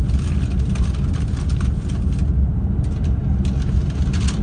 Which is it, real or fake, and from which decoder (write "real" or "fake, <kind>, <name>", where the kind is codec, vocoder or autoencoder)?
real